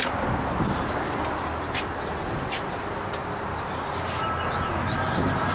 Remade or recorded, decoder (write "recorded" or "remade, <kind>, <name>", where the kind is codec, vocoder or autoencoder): recorded